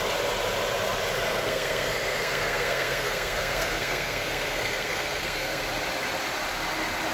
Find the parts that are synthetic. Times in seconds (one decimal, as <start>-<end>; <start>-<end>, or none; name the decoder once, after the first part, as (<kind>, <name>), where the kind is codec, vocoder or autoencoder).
1.3-5.6 (codec, SNAC)